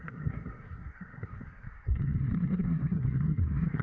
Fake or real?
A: fake